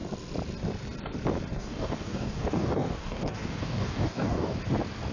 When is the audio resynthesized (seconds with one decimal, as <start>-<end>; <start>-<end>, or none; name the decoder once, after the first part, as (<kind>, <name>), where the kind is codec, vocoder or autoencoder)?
1.5-4.6 (codec, DAC)